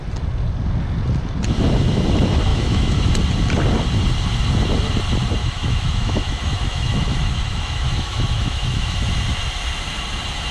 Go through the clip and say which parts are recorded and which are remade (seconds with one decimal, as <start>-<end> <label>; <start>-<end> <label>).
0.0-2.5 recorded; 2.5-3.1 remade; 3.1-5.4 recorded; 5.4-9.0 remade; 9.0-10.5 recorded